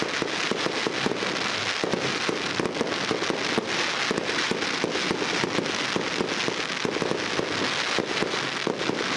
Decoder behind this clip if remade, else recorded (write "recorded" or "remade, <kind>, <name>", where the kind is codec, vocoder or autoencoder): recorded